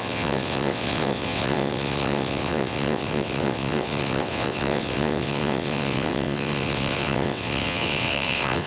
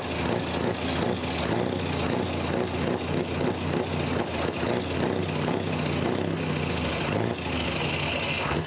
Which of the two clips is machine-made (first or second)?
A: first